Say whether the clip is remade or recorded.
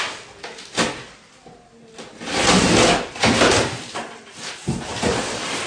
recorded